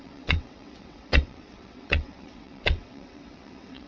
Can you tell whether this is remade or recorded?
remade